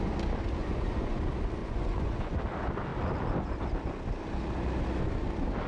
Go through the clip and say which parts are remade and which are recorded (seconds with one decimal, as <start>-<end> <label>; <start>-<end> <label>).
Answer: 0.0-0.6 recorded; 0.6-1.2 remade; 1.2-1.6 recorded; 1.6-2.4 remade; 2.4-5.7 recorded